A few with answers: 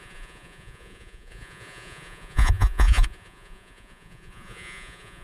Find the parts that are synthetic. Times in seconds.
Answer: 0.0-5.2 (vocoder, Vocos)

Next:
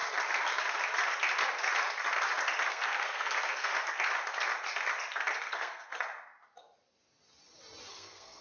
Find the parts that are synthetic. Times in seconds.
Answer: 2.7-3.7 (codec, SNAC); 5.4-5.9; 7.9-8.4

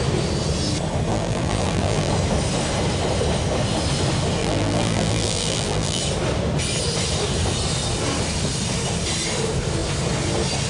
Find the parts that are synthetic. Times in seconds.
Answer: 1.1-2.1 (vocoder, BigVGAN v2); 4.4-6.0

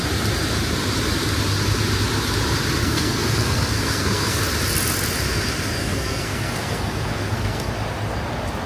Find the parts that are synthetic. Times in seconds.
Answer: 2.8-4.4 (codec, SNAC); 5.8-7.7

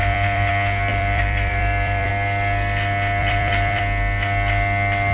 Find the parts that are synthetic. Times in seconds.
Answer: 0.0-0.5 (vocoder, BigVGAN v2); 0.9-2.1; 3.2-3.8

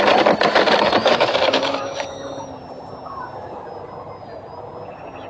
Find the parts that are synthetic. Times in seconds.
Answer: 1.0-2.4 (autoencoder, DAC-VAE)

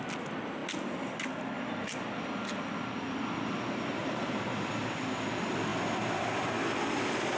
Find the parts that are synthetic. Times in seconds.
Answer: 4.0-4.8 (vocoder, BigVGAN v2)